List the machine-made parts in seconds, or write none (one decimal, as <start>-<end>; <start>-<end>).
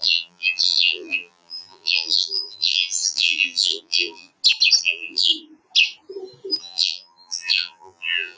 0.0-4.3; 4.8-5.3; 6.6-8.4